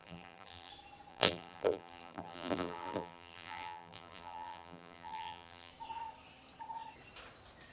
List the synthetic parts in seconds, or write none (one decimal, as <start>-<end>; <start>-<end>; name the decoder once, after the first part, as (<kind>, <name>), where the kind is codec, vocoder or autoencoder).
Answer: 0.0-0.7 (vocoder, BigVGAN v2); 1.1-5.7